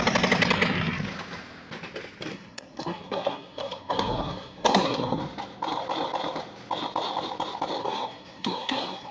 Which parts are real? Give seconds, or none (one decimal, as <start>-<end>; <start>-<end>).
0.0-2.3; 5.2-7.8